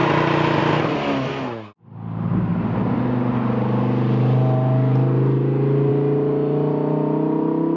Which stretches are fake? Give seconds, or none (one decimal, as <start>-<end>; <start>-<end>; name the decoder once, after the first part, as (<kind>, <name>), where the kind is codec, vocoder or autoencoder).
none